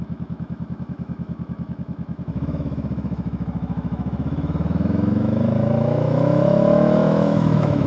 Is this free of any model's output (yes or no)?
no